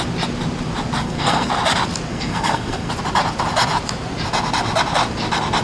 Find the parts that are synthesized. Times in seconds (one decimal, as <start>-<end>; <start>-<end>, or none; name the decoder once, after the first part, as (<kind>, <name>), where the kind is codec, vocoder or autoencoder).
1.0-1.5 (codec, SNAC); 2.1-2.9